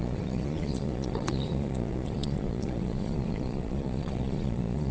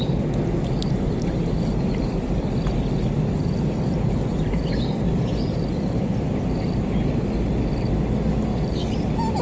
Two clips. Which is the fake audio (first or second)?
first